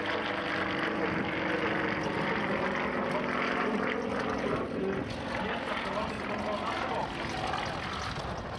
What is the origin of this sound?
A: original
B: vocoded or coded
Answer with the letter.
A